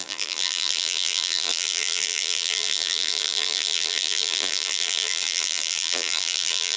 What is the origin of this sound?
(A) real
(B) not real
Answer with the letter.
B